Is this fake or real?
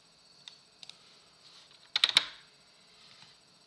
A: real